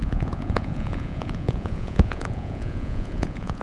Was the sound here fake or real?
fake